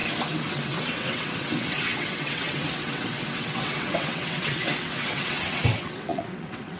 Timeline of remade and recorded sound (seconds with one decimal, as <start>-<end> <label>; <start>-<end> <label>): 0.0-0.5 recorded; 0.5-6.8 remade